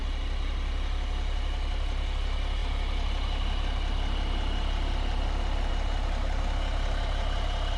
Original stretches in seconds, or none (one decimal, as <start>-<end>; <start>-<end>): 0.0-7.8

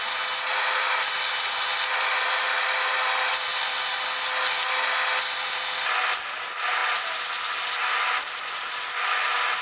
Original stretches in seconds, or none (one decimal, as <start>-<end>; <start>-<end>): 0.0-9.6

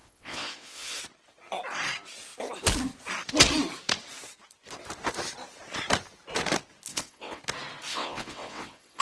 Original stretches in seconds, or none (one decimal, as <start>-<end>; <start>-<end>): 1.0-6.9; 7.4-7.9

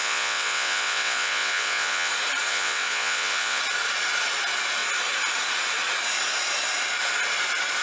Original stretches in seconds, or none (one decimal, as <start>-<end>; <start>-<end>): 2.1-2.5; 3.6-7.8

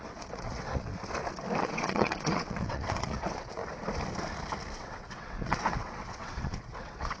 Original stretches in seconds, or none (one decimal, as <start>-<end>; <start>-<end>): 0.9-1.6; 3.6-4.8

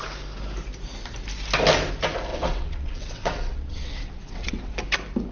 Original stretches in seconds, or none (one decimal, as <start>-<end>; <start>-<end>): 0.0-2.3; 4.7-5.3